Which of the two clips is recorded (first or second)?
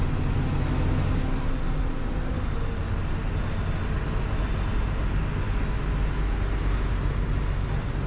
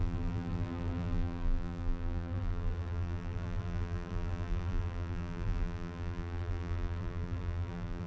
first